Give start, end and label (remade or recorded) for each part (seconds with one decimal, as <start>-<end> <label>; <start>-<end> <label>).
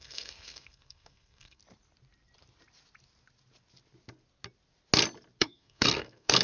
0.0-1.6 remade; 1.6-5.4 recorded; 5.4-6.4 remade